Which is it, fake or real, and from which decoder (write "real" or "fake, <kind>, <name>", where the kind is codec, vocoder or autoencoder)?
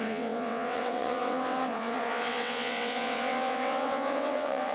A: fake, vocoder, WaveNeXt